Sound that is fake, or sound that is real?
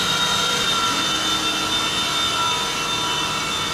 real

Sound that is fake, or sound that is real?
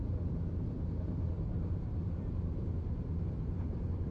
fake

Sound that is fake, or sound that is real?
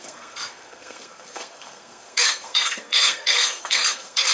fake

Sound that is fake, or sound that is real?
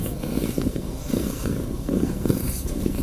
fake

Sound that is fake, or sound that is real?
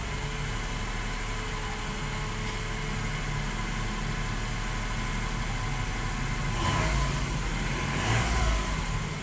real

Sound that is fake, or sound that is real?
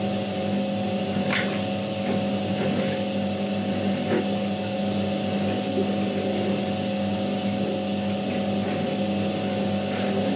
real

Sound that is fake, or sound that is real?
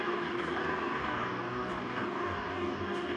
fake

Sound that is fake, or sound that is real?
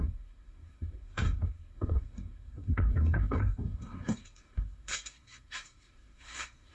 fake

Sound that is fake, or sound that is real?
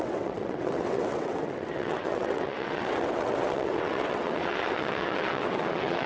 fake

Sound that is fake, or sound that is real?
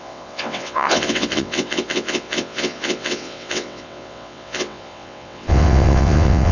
fake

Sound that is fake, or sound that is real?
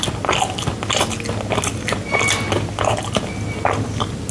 real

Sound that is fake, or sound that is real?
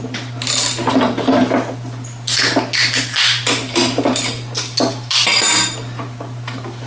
real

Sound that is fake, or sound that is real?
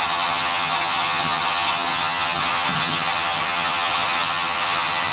fake